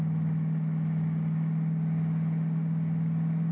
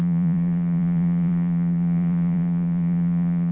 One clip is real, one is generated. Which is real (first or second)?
first